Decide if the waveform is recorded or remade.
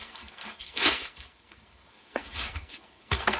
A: remade